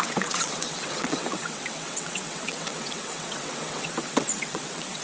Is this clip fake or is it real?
fake